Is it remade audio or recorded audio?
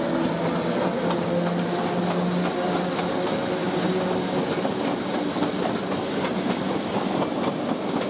recorded